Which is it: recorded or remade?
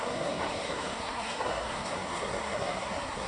remade